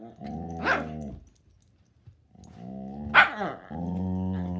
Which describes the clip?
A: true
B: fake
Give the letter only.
A